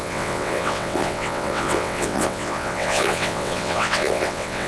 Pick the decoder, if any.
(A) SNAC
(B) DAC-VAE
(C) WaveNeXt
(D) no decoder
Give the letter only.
C